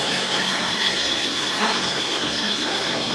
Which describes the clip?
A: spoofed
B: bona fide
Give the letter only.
A